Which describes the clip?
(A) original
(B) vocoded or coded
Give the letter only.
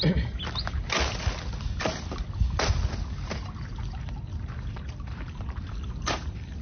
A